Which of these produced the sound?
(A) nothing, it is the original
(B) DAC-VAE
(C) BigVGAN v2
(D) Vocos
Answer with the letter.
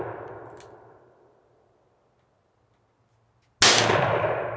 A